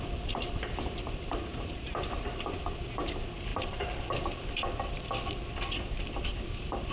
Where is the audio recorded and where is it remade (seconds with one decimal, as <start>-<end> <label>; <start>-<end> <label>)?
0.0-1.5 recorded; 1.5-2.7 remade; 2.7-3.5 recorded; 3.5-5.0 remade; 5.0-6.9 recorded